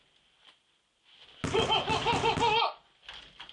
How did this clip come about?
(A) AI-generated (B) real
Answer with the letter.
B